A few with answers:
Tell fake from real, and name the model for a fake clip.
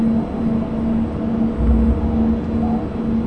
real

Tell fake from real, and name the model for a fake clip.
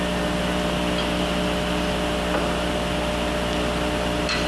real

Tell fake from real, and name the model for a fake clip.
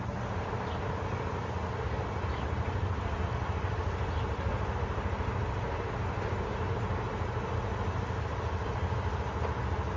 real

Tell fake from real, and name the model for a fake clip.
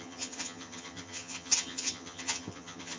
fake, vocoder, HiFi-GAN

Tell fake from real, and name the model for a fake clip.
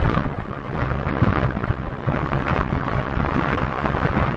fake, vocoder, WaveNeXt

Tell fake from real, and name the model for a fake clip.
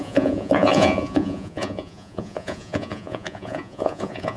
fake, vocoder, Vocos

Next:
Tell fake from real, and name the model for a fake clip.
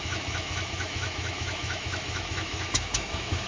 fake, autoencoder, DAC-VAE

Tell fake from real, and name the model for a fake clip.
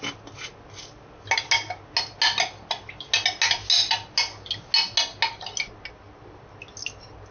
real